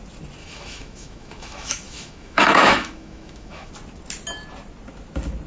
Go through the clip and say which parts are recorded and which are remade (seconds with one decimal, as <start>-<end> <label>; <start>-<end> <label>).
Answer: 0.0-0.4 recorded; 0.4-3.7 remade; 3.7-5.5 recorded